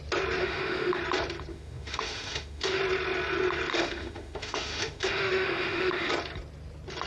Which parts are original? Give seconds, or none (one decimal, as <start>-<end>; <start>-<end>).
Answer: 0.0-0.4; 1.0-1.5; 2.8-3.7; 6.1-7.1